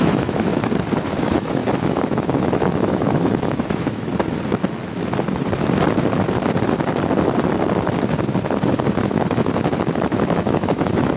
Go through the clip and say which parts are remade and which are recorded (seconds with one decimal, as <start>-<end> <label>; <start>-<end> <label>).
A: 0.0-0.5 remade; 0.5-1.2 recorded; 1.2-4.1 remade; 4.1-9.0 recorded; 9.0-11.2 remade

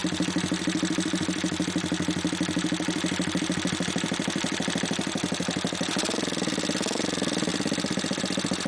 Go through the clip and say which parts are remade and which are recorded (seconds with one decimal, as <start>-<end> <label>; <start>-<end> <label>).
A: 0.0-8.7 recorded

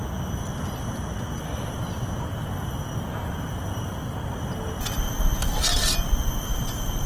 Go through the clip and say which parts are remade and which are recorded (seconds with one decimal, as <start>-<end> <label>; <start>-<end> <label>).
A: 0.0-7.1 recorded

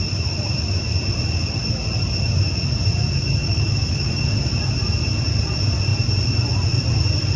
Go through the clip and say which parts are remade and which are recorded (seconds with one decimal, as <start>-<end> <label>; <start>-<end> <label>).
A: 0.0-3.4 recorded; 3.4-4.1 remade; 4.1-7.4 recorded

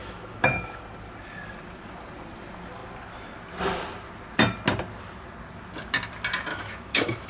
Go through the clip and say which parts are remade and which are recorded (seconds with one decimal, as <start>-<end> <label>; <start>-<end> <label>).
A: 0.0-0.8 remade; 0.8-6.5 recorded; 6.5-7.3 remade

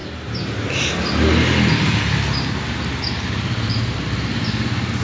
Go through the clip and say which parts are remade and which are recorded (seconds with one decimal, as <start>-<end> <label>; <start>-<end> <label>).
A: 0.0-5.0 recorded

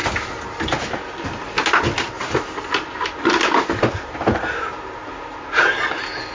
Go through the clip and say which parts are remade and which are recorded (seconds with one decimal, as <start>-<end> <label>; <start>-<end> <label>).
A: 0.0-6.3 recorded